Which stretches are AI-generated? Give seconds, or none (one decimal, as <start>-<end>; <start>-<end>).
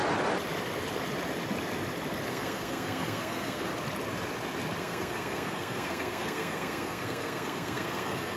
2.3-3.7; 4.8-8.4